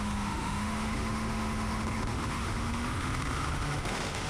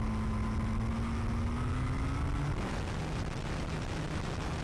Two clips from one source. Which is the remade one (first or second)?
first